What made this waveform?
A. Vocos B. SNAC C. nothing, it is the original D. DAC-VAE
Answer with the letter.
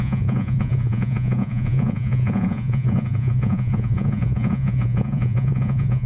A